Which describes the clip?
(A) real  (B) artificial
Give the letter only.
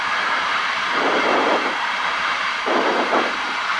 B